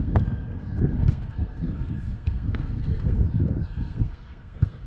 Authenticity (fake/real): fake